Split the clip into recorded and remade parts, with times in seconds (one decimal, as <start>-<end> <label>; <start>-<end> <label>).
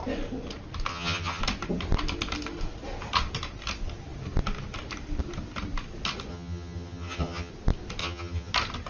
0.0-0.9 recorded; 0.9-1.4 remade; 1.4-6.3 recorded; 6.3-7.5 remade; 7.5-8.0 recorded; 8.0-8.5 remade; 8.5-8.9 recorded